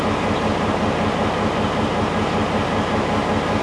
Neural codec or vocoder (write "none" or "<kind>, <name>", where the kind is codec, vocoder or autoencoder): none